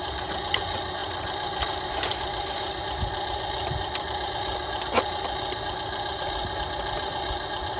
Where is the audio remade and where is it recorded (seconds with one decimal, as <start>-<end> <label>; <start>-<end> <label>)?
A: 0.0-1.0 recorded; 1.0-4.3 remade; 4.3-7.8 recorded

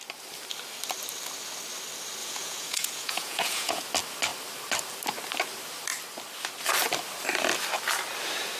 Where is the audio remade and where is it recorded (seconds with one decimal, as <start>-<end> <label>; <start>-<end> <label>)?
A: 0.0-2.2 recorded; 2.2-3.8 remade; 3.8-8.6 recorded

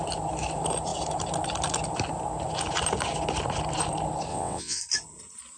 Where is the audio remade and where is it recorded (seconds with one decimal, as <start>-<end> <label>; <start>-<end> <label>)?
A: 0.0-4.3 recorded; 4.3-4.8 remade; 4.8-5.6 recorded

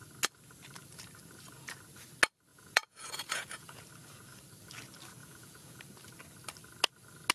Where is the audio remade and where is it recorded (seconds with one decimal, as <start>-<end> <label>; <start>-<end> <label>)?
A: 0.0-2.5 recorded; 2.5-3.8 remade; 3.8-5.2 recorded; 5.2-5.8 remade; 5.8-7.3 recorded

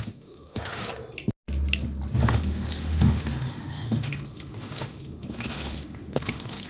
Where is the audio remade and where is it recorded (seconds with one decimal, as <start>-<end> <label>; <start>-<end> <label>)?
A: 0.0-0.8 remade; 0.8-2.2 recorded; 2.2-6.7 remade

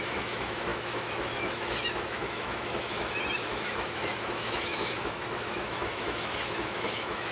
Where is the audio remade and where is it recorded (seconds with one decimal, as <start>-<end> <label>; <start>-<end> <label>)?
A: 0.0-7.3 remade

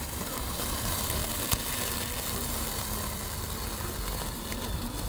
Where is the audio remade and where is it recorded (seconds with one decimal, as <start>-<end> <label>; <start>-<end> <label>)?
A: 0.0-1.2 remade; 1.2-4.3 recorded; 4.3-5.1 remade